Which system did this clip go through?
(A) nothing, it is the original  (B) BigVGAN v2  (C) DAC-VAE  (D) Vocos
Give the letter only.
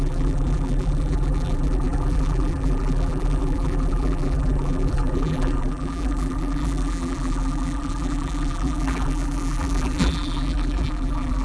B